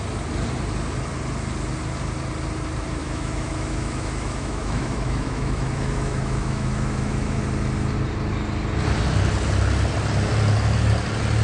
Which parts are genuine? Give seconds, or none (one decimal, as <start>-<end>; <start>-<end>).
0.0-3.0; 7.4-11.4